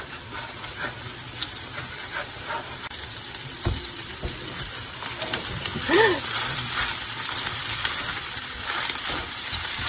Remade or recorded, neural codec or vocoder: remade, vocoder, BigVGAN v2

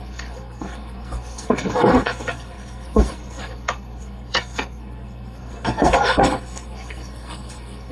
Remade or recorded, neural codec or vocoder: remade, codec, SNAC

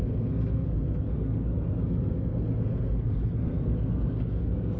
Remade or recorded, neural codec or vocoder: remade, codec, SNAC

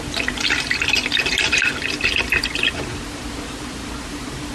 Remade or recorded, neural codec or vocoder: recorded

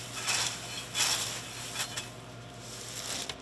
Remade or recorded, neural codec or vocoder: recorded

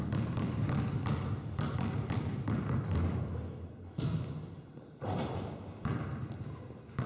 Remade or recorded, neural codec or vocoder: recorded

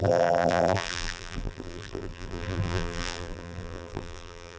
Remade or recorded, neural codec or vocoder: remade, vocoder, BigVGAN v2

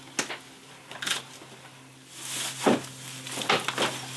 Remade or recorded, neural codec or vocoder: recorded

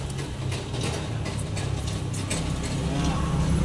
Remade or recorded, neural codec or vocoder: recorded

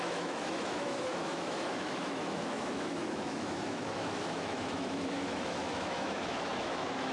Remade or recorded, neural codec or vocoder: remade, autoencoder, DAC-VAE